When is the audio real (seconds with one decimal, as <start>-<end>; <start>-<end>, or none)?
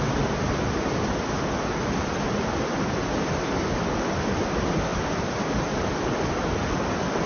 0.0-7.3